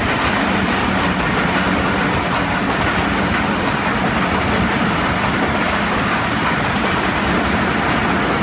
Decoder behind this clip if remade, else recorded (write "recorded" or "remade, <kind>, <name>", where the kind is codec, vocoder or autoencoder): recorded